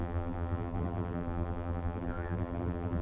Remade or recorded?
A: remade